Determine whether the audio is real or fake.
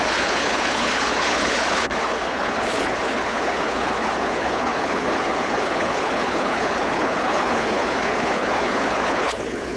fake